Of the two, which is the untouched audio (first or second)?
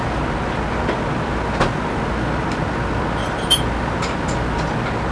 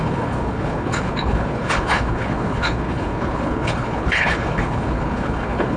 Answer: first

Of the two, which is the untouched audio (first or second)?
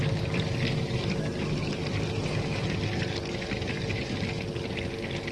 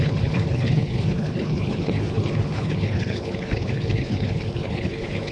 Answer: first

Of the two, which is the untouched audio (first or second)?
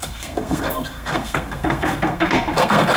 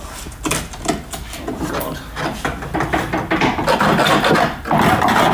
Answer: second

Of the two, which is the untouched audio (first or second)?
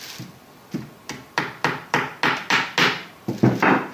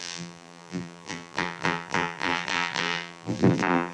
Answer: first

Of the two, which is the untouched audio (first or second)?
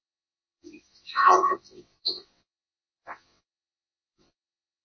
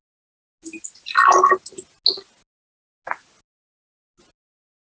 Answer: second